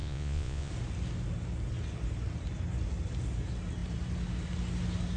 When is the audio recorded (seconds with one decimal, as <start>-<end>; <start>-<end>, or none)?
0.7-5.2